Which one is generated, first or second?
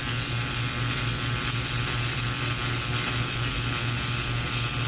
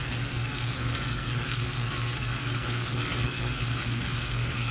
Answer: second